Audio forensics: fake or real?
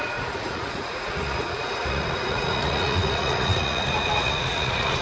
fake